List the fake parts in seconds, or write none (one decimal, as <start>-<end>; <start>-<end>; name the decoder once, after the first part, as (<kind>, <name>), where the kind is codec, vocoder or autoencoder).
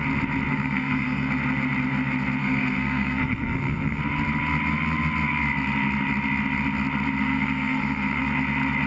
0.5-1.3 (codec, SNAC); 2.4-4.0; 7.2-8.2